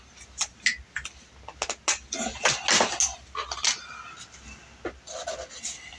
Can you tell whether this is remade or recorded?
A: recorded